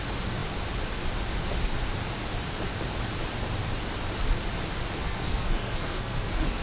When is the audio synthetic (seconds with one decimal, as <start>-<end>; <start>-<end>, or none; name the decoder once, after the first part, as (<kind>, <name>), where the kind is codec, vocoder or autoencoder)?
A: 5.0-6.6 (codec, SNAC)